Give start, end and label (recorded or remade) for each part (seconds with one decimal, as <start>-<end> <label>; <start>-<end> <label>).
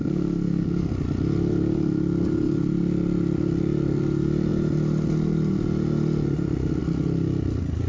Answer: 0.0-0.9 remade; 0.9-7.9 recorded